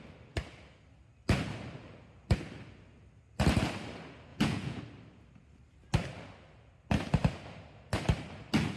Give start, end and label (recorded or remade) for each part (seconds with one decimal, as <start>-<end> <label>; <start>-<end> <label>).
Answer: 0.0-4.3 recorded; 4.3-4.8 remade; 4.8-8.8 recorded